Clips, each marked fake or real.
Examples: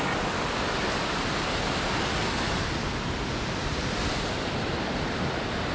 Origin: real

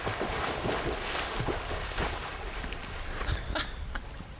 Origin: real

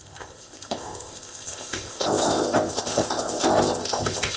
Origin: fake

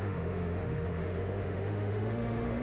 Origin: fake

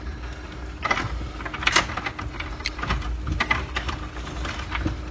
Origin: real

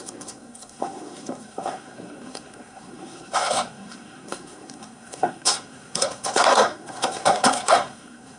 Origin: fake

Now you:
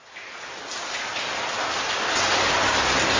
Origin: real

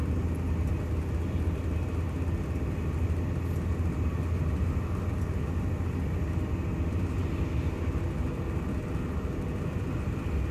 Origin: real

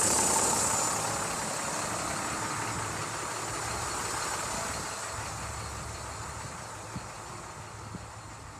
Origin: real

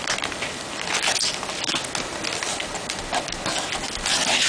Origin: real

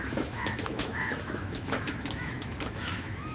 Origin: fake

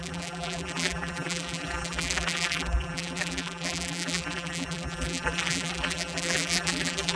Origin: fake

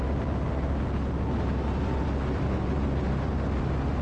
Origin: real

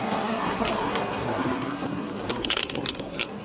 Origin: fake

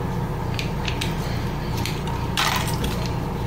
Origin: real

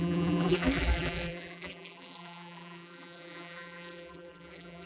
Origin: fake